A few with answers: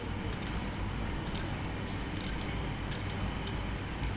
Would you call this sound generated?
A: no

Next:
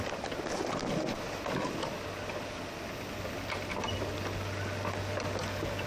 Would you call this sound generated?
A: no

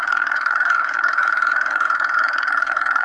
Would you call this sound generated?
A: yes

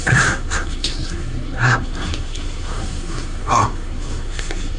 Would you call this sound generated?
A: yes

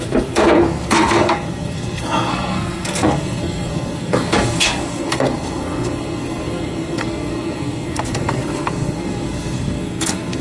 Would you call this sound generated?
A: yes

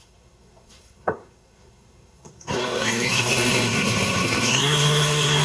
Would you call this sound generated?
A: yes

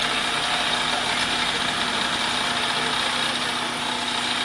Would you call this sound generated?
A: no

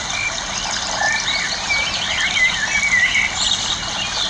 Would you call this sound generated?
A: no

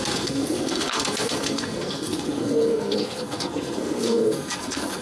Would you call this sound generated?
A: yes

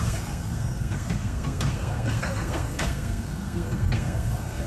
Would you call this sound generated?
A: yes